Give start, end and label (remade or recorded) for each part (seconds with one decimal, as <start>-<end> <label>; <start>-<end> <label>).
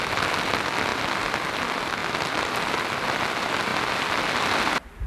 0.0-2.0 recorded; 2.0-2.8 remade; 2.8-5.1 recorded